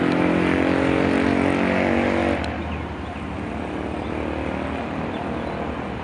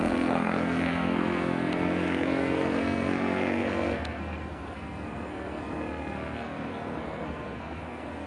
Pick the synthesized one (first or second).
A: second